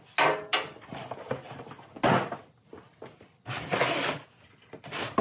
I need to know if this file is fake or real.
real